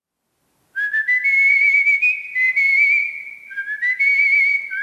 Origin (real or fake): real